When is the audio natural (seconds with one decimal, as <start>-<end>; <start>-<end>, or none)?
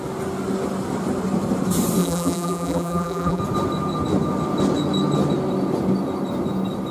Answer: 0.0-2.0; 3.4-6.9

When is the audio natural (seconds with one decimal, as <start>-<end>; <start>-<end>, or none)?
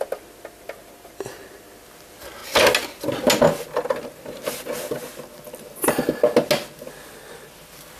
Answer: 0.0-8.0